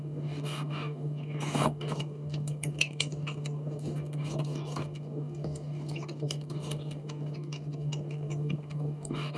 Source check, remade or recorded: remade